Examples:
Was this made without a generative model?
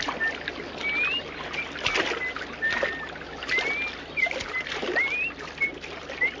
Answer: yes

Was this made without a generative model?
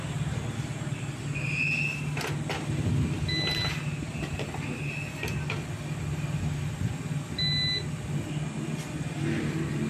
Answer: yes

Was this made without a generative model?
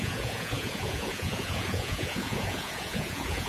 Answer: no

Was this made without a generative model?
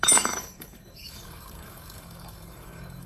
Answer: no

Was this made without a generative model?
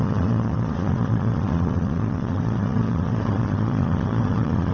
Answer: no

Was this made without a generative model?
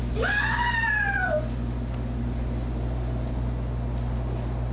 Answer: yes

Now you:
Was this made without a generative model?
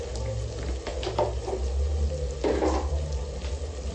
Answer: yes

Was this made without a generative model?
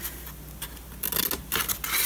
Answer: yes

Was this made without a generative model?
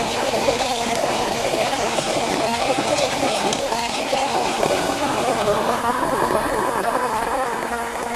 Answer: no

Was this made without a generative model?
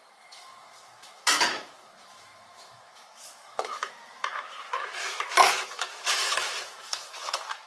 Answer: no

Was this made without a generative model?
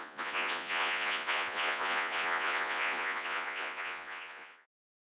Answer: no